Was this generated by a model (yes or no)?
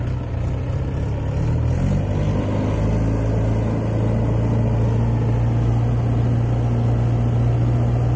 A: no